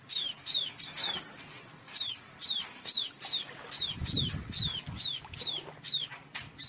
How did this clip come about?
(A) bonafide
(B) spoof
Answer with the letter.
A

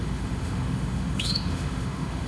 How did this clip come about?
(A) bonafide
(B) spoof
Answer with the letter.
B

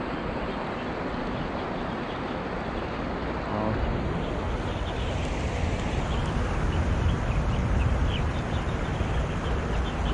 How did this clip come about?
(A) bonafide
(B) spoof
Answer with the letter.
A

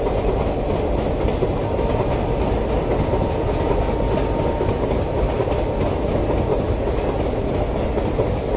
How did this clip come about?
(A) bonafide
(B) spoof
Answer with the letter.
A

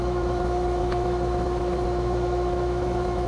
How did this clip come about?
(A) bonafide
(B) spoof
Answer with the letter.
B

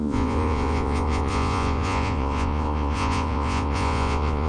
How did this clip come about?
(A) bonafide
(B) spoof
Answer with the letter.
B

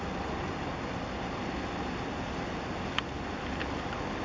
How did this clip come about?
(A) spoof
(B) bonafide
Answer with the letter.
B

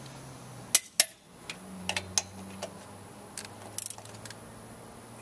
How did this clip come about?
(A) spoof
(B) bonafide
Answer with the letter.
B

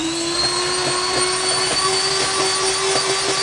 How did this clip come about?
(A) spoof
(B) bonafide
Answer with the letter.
B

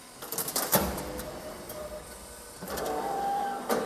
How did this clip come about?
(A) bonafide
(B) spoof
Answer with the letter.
B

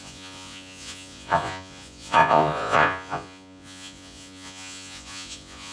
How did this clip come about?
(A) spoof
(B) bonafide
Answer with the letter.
A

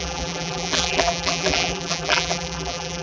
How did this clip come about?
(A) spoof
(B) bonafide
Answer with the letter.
A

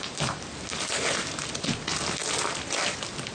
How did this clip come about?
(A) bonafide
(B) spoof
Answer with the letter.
A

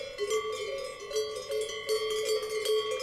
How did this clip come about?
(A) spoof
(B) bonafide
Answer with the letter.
B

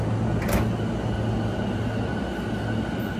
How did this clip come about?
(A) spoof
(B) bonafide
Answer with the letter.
B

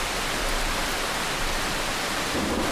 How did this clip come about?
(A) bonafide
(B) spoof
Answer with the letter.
B